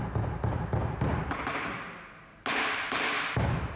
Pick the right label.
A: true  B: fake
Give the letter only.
A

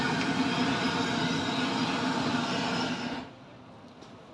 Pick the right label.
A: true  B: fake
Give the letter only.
A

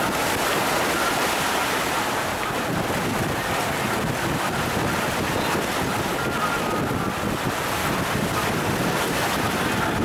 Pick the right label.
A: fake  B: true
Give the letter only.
B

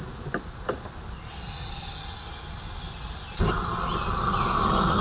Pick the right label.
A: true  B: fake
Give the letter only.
A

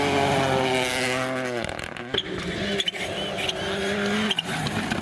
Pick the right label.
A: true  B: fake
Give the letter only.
A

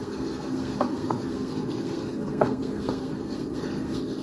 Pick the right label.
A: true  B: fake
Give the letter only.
B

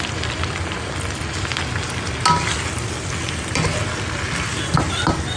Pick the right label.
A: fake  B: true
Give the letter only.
B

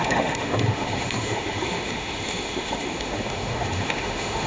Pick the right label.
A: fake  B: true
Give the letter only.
A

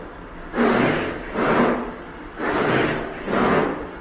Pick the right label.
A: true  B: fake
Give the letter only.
A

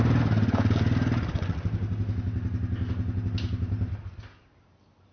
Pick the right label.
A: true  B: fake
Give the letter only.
A